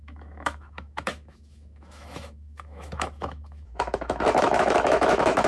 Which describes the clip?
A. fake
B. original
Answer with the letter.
A